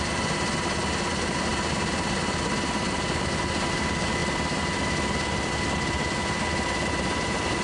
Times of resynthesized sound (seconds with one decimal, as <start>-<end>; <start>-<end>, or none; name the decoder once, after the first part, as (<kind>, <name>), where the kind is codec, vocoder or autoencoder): none